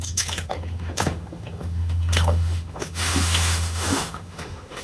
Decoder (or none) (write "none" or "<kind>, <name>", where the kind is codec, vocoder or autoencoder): autoencoder, DAC-VAE